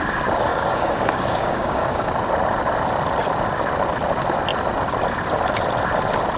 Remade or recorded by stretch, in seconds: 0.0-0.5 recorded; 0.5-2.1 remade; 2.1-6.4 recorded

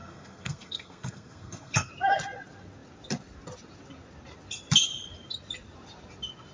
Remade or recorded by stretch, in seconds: 0.0-1.9 remade; 1.9-6.5 recorded

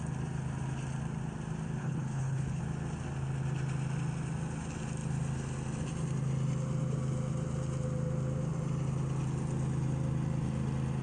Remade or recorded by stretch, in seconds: 0.0-1.8 recorded; 1.8-2.6 remade; 2.6-11.0 recorded

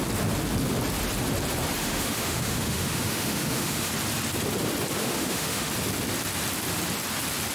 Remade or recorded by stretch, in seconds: 0.0-1.8 recorded; 1.8-3.9 remade; 3.9-5.0 recorded; 5.0-5.7 remade; 5.7-7.5 recorded

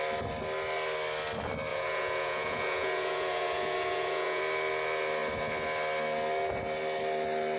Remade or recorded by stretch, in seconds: 0.0-1.7 recorded; 1.7-4.4 remade; 4.4-7.6 recorded

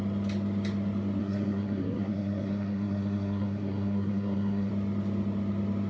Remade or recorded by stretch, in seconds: 0.0-1.2 recorded; 1.2-4.7 remade; 4.7-5.9 recorded